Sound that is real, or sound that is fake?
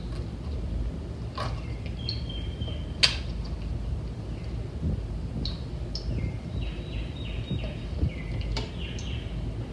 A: real